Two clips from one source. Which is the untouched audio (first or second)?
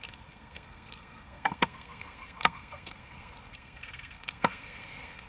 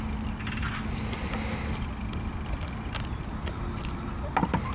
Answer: second